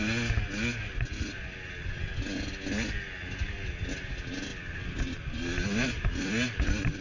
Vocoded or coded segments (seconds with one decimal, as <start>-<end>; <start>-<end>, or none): none